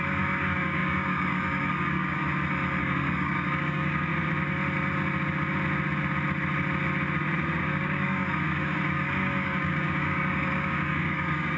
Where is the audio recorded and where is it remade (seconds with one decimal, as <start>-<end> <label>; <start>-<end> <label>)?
0.0-2.2 remade; 2.2-2.8 recorded; 2.8-4.1 remade; 4.1-7.6 recorded; 7.6-11.6 remade